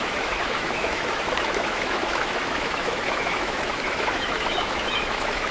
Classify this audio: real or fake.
fake